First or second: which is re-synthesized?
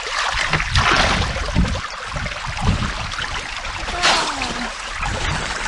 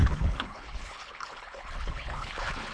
second